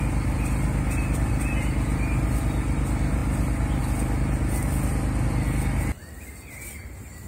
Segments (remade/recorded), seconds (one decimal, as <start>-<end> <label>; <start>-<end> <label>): 0.0-7.3 recorded